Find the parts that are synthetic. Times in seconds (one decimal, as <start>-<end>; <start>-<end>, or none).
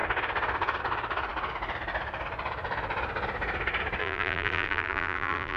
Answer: 4.0-5.6